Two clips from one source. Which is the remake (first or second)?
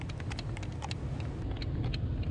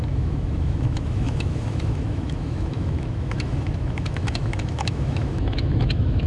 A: second